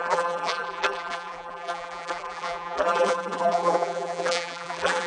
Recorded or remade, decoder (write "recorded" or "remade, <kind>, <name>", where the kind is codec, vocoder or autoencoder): remade, vocoder, BigVGAN v2